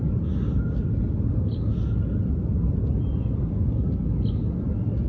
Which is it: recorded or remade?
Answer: recorded